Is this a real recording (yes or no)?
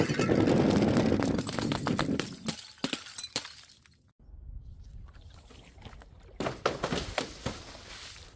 yes